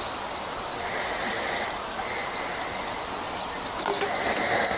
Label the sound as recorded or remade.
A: recorded